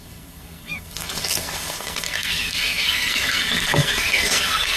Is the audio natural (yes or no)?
no